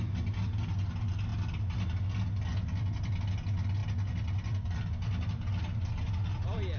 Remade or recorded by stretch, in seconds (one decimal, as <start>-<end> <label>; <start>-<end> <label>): 0.0-6.8 recorded